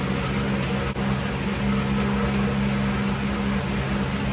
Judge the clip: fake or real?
real